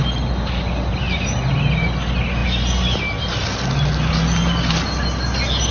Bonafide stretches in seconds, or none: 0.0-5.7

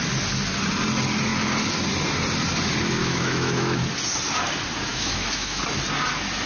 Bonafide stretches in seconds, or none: 0.0-3.0; 3.8-4.9; 5.6-6.5

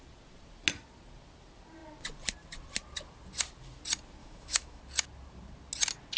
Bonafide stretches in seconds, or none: 0.0-4.2; 4.8-6.2

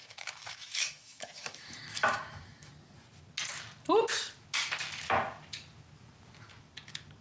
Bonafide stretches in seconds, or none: 2.7-7.2

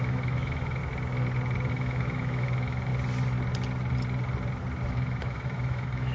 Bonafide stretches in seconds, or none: 0.8-1.7; 2.9-4.9